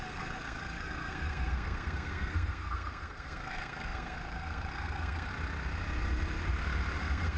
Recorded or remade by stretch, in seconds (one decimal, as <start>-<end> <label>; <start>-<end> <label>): 0.0-5.3 remade; 5.3-7.0 recorded; 7.0-7.4 remade